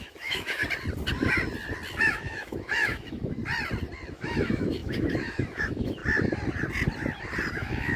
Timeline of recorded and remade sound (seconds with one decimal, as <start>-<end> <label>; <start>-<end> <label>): 0.0-0.6 remade; 0.6-2.0 recorded; 2.0-3.4 remade; 3.4-4.1 recorded; 4.1-6.0 remade; 6.0-7.5 recorded; 7.5-8.0 remade